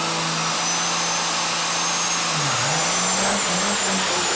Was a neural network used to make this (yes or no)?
no